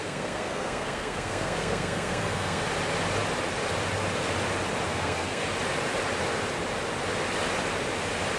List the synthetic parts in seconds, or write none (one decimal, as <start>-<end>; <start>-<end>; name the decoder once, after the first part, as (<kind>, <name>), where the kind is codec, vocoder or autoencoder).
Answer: 0.0-2.6 (codec, SNAC); 4.9-5.4